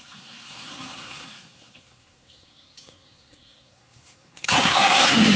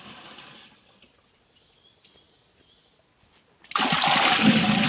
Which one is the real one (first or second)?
second